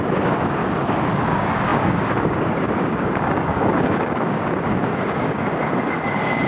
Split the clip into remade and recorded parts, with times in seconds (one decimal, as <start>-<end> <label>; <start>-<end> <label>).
0.0-0.6 remade; 0.6-1.2 recorded; 1.2-6.5 remade